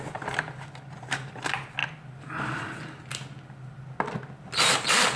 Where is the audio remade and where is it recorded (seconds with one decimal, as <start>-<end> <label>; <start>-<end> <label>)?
0.0-5.2 recorded